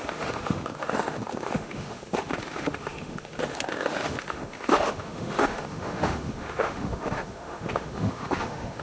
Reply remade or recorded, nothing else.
remade